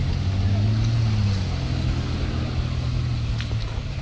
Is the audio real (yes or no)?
yes